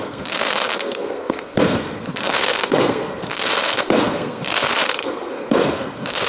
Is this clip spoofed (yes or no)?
yes